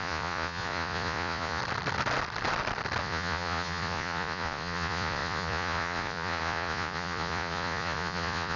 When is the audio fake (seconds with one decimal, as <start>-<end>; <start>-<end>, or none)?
0.0-1.6; 3.0-8.6